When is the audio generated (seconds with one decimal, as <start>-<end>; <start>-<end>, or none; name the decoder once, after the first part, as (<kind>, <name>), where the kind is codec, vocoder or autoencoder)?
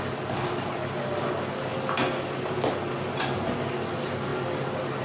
none